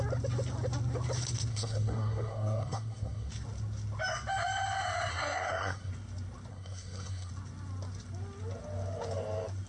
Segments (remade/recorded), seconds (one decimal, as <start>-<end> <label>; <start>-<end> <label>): 0.0-1.5 recorded; 1.5-3.3 remade; 3.3-5.1 recorded; 5.1-5.9 remade; 5.9-6.5 recorded; 6.5-7.3 remade; 7.3-9.7 recorded